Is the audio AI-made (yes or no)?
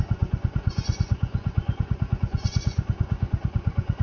yes